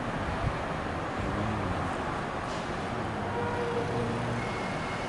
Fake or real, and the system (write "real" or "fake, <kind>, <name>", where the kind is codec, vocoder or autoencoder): real